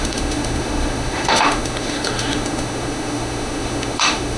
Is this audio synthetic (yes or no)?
yes